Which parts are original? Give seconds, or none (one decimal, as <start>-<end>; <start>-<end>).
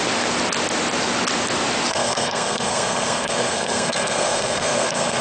0.0-1.9